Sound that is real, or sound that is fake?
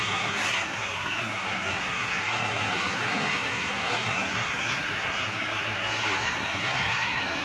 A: fake